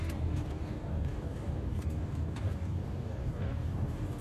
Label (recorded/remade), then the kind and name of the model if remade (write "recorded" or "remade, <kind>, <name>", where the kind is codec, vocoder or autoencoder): remade, codec, DAC